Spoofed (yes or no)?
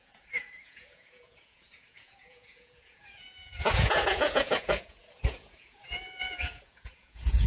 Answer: yes